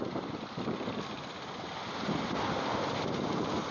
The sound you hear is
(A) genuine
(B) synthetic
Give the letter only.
A